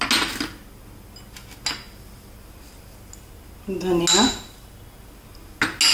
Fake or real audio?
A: real